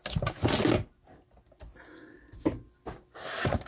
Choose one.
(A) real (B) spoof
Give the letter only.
A